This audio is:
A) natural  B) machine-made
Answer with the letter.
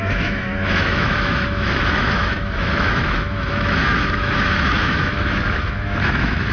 B